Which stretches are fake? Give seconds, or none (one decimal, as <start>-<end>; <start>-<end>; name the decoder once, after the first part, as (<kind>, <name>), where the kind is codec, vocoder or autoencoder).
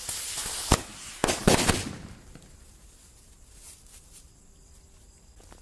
none